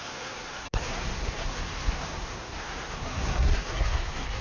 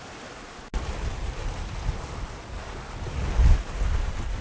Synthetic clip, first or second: first